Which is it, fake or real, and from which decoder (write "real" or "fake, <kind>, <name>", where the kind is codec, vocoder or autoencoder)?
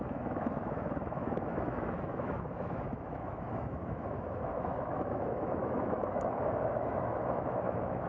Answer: fake, autoencoder, DAC-VAE